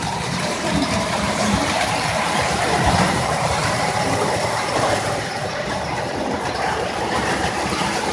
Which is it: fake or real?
fake